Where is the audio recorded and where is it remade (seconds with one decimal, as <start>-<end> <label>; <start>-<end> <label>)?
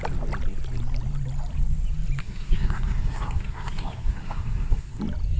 0.0-2.2 recorded; 2.2-5.0 remade; 5.0-5.4 recorded